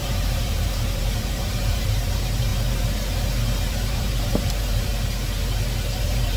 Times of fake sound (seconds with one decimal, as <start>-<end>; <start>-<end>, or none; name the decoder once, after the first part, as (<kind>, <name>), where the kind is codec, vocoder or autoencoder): 0.0-2.5 (vocoder, BigVGAN v2); 3.7-4.9; 6.0-6.4